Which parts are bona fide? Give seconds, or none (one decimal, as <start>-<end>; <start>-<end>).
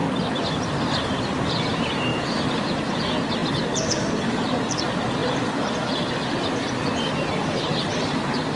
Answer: 0.0-1.1